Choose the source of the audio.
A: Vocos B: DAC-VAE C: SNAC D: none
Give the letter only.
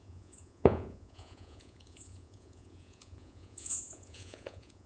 A